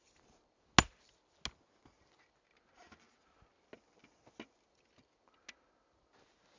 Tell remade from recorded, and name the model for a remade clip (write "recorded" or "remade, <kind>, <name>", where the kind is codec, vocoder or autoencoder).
recorded